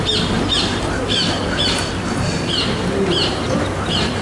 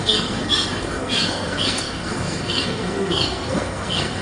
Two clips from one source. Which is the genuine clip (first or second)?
first